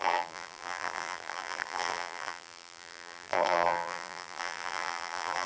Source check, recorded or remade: remade